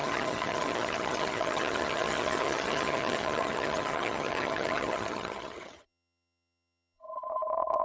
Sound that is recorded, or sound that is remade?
remade